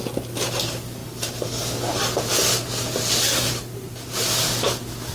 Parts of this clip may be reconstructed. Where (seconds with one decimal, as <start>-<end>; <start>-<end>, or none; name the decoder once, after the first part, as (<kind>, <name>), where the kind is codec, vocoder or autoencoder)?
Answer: none